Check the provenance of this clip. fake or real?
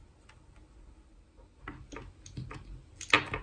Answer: real